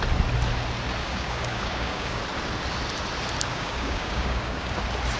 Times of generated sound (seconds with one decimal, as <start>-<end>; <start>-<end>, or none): 1.0-2.2; 3.5-4.8